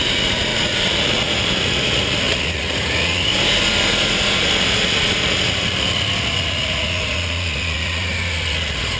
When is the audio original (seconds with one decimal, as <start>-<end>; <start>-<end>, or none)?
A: 3.3-4.2